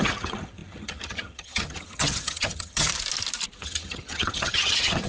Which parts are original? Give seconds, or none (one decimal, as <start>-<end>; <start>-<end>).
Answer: 2.9-3.6